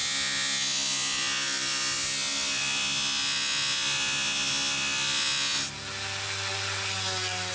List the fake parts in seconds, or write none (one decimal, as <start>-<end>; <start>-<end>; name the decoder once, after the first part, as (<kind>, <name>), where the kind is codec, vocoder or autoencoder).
none